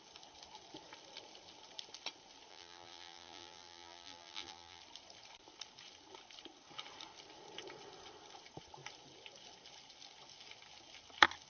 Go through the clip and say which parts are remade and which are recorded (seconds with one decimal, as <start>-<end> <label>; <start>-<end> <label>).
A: 0.0-2.5 recorded; 2.5-4.8 remade; 4.8-11.5 recorded